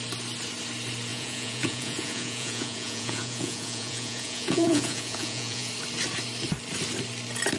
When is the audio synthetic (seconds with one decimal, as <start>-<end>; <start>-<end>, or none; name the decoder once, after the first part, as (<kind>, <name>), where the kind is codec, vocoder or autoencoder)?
1.1-5.7 (vocoder, Vocos)